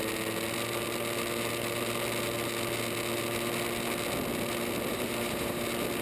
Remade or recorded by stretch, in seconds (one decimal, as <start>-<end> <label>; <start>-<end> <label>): 0.0-4.9 recorded; 4.9-5.6 remade; 5.6-6.0 recorded